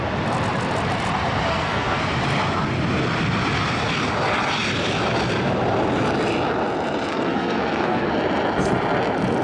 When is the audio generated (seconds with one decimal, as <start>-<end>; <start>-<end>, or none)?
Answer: 1.5-2.0; 7.1-8.1